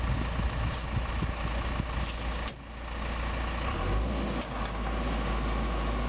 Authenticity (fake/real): real